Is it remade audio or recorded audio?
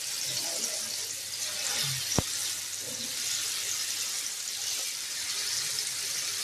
recorded